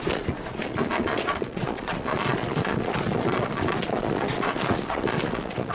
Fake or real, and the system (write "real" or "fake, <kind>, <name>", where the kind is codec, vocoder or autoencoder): fake, vocoder, Vocos